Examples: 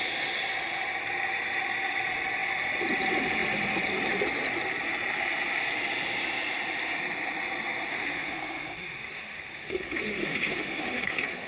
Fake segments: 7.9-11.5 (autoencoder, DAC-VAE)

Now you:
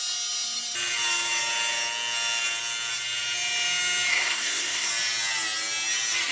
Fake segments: 4.1-4.9 (codec, SNAC)

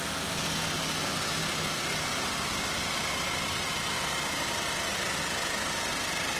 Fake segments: 1.4-5.2 (vocoder, BigVGAN v2)

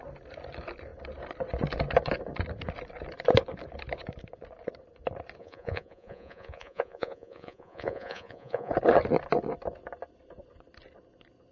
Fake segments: 5.4-8.7 (vocoder, Vocos)

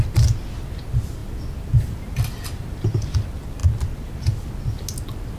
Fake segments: none